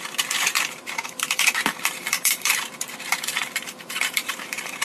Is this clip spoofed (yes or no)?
yes